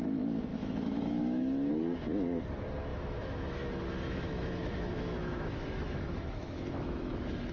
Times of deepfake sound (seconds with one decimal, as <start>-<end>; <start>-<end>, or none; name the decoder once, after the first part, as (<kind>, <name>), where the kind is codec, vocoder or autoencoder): 0.5-1.7 (autoencoder, DAC-VAE); 2.9-7.5